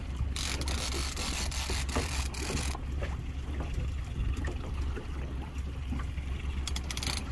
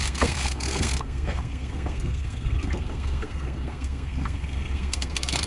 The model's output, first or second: second